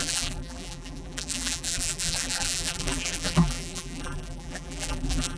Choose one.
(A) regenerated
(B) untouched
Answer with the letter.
A